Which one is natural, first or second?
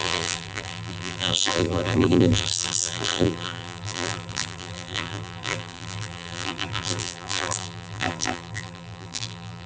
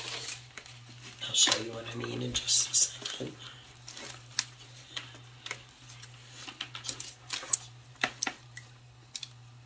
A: second